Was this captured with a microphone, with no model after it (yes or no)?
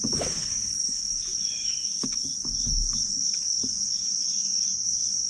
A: no